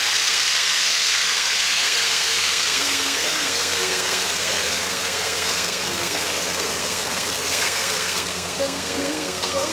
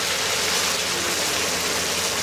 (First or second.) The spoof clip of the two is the first